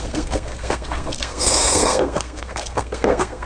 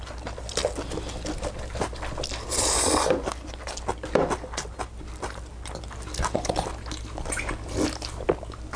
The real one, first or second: second